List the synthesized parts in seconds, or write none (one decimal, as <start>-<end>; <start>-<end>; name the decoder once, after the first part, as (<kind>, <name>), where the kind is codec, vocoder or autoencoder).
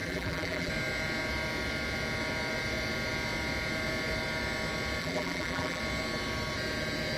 0.0-0.7 (vocoder, BigVGAN v2); 5.0-5.8